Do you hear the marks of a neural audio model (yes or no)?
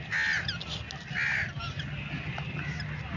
no